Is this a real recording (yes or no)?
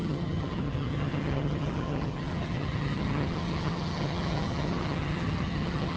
no